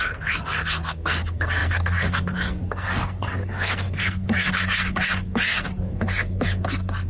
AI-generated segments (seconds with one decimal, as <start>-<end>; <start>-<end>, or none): 0.0-7.1